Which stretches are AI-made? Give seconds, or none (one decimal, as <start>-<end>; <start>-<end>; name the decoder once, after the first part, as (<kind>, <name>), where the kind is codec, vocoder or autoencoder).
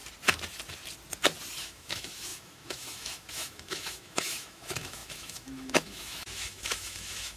1.6-7.4 (autoencoder, DAC-VAE)